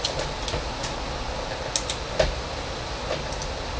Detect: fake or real real